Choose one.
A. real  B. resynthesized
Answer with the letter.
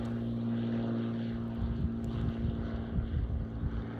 A